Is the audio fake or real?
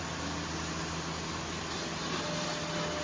real